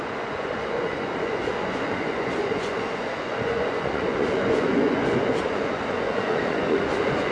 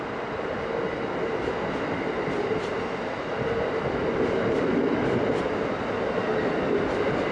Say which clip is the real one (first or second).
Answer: second